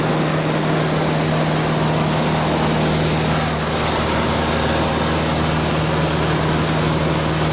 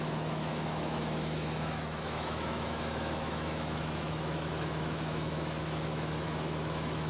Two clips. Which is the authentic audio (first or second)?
first